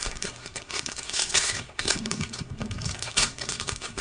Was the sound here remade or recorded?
remade